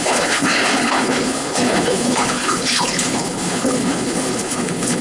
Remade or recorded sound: remade